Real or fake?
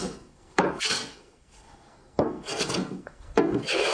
fake